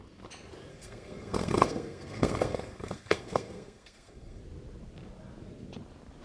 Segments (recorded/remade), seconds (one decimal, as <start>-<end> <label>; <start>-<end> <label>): 0.0-0.7 recorded; 0.7-4.4 remade; 4.4-6.2 recorded